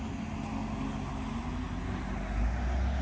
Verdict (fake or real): real